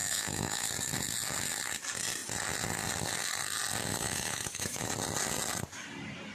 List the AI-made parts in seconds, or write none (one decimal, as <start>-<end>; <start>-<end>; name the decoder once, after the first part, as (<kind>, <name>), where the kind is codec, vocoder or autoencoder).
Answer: 0.0-0.7 (autoencoder, DAC-VAE); 3.9-4.9